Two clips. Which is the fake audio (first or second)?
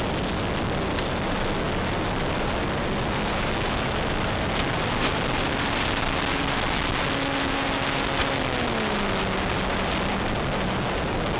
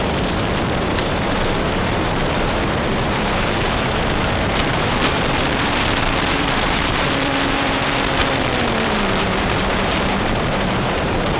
second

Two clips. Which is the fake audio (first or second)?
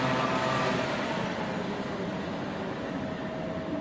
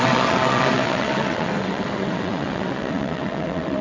second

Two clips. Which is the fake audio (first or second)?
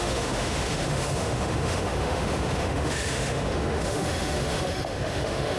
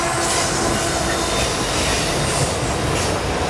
first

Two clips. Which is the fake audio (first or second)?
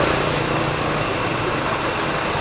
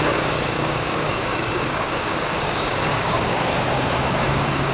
second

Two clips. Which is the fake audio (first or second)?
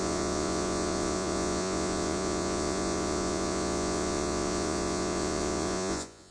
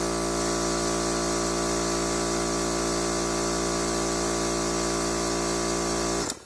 first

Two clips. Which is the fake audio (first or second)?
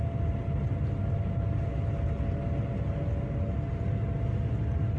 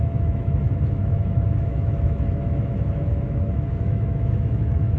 second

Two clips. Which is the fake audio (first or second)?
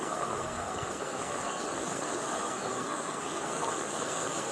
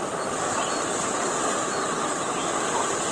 first